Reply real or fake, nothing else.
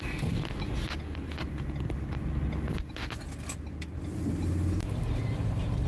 real